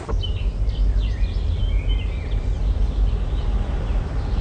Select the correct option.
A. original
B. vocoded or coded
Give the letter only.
A